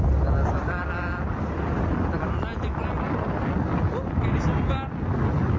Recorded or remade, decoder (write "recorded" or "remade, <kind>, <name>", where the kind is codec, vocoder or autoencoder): recorded